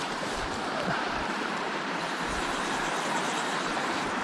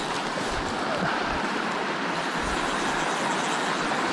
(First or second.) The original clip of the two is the second